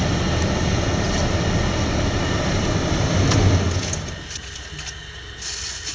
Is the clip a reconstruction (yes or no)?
no